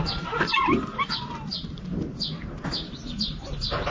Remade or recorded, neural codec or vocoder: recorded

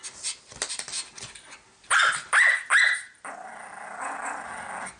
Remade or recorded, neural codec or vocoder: recorded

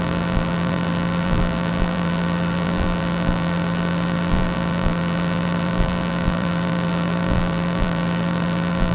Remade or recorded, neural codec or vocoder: remade, vocoder, BigVGAN v2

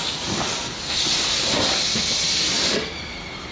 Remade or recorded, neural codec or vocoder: recorded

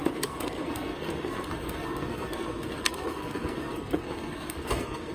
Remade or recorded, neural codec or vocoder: remade, codec, SNAC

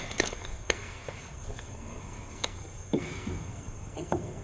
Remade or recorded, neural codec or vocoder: remade, codec, SNAC